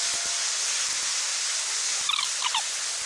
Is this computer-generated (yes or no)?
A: no